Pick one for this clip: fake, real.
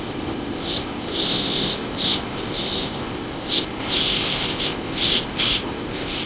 fake